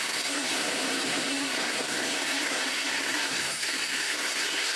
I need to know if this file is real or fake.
fake